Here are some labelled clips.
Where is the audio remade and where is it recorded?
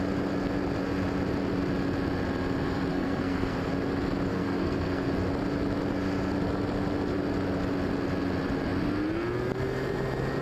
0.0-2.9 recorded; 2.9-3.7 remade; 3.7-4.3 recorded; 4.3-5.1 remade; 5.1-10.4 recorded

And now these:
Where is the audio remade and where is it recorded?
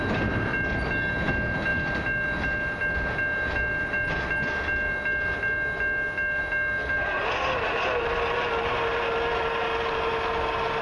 0.0-10.8 recorded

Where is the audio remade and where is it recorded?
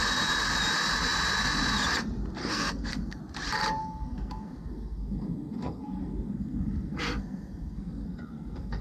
0.0-2.4 recorded; 2.4-3.2 remade; 3.2-3.8 recorded; 3.8-8.8 remade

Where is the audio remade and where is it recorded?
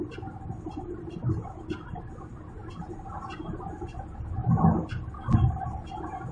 0.0-6.3 recorded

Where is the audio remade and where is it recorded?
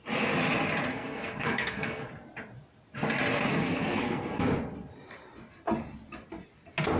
0.0-0.9 recorded; 0.9-2.1 remade; 2.1-3.5 recorded; 3.5-4.4 remade; 4.4-7.0 recorded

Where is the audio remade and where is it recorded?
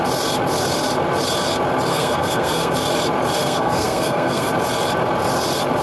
0.0-1.9 recorded; 1.9-2.7 remade; 2.7-3.4 recorded; 3.4-4.5 remade; 4.5-5.8 recorded